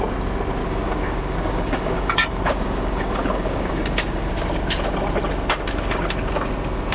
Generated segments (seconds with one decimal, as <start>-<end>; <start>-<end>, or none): 0.6-4.3